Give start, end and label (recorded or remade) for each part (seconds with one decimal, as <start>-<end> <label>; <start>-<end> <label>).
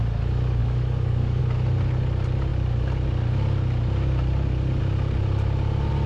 0.0-0.6 recorded; 0.6-1.4 remade; 1.4-6.1 recorded